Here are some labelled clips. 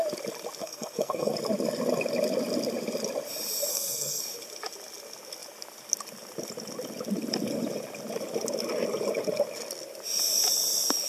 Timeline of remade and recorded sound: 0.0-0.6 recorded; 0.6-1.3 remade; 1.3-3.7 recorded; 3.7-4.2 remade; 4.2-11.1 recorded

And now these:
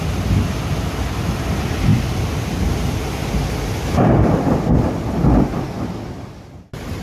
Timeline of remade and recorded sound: 0.0-7.0 recorded

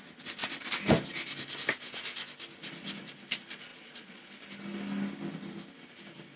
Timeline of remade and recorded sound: 0.0-3.7 recorded; 3.7-4.3 remade; 4.3-6.4 recorded

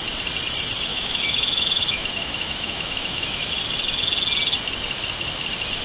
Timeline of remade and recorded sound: 0.0-0.9 recorded; 0.9-3.4 remade; 3.4-5.8 recorded